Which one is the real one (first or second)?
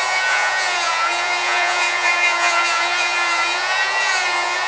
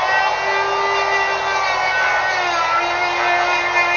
second